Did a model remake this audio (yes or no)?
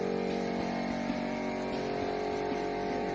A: no